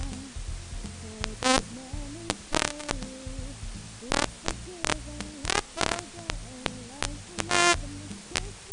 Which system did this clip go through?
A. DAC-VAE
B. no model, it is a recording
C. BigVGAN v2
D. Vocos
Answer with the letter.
B